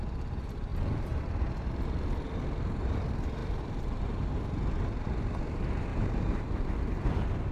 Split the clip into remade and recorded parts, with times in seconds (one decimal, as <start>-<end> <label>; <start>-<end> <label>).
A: 0.0-0.7 recorded; 0.7-1.2 remade; 1.2-3.4 recorded; 3.4-4.6 remade; 4.6-5.9 recorded; 5.9-7.1 remade; 7.1-7.5 recorded